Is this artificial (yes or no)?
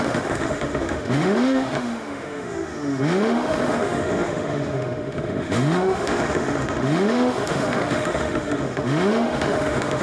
yes